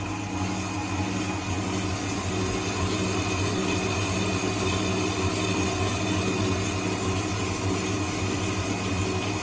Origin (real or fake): real